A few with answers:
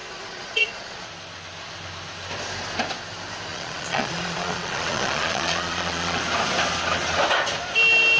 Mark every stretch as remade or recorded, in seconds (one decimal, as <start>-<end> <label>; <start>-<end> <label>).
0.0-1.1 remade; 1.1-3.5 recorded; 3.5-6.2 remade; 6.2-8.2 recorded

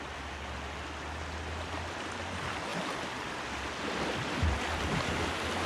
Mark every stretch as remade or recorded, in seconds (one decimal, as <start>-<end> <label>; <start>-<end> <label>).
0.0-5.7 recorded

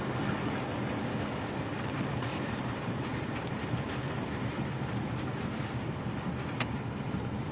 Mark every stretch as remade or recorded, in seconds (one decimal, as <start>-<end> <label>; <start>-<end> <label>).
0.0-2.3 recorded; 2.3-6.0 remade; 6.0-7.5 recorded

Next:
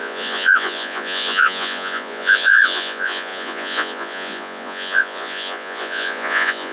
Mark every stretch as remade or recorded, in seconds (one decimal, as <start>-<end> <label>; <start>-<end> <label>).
0.0-6.7 remade

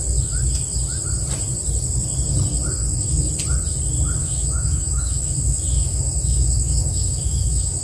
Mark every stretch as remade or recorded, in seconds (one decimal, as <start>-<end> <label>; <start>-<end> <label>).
0.0-2.8 recorded; 2.8-3.3 remade; 3.3-4.2 recorded; 4.2-7.8 remade

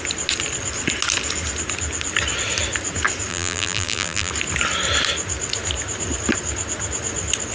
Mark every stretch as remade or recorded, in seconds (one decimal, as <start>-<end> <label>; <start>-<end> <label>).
0.0-3.3 recorded; 3.3-4.3 remade; 4.3-7.5 recorded

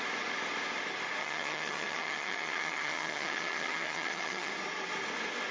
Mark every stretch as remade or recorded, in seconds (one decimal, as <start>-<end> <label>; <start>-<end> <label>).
0.0-1.2 recorded; 1.2-4.5 remade; 4.5-5.5 recorded